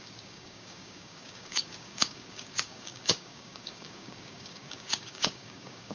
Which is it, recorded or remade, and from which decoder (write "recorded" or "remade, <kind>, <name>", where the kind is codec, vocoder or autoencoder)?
remade, codec, DAC